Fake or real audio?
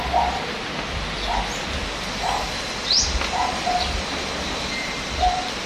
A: real